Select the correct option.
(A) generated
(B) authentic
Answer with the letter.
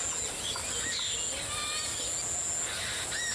B